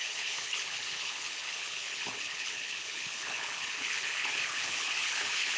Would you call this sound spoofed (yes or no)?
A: yes